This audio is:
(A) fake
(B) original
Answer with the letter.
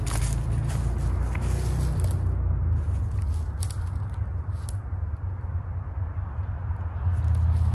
B